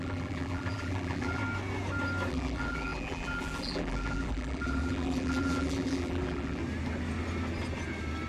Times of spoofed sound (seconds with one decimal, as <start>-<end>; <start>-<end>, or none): 0.0-1.4; 2.3-6.6